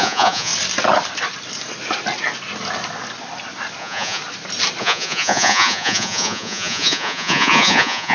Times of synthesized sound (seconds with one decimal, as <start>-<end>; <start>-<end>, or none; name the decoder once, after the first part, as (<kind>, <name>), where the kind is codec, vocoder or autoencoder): 0.0-0.5 (vocoder, Vocos); 3.8-4.2; 4.8-8.1